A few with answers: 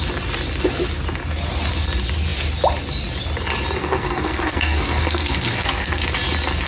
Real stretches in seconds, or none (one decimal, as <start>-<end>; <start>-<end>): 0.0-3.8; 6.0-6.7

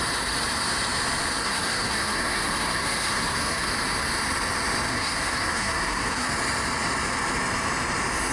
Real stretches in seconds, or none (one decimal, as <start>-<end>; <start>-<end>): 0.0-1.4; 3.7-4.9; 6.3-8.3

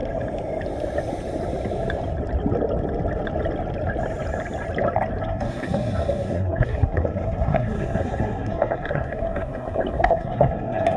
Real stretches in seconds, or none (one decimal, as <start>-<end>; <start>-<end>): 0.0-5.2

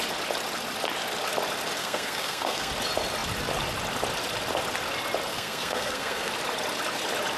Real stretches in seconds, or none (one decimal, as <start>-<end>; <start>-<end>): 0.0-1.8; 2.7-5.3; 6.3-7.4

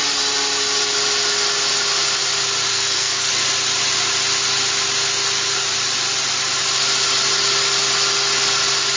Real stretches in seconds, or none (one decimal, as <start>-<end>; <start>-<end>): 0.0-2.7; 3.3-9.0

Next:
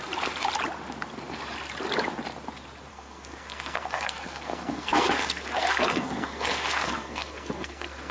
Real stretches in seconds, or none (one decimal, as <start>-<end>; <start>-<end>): 0.0-2.9